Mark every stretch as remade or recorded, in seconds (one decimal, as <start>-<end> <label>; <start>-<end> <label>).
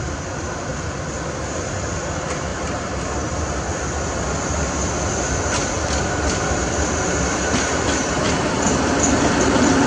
0.0-0.7 remade; 0.7-1.5 recorded; 1.5-9.9 remade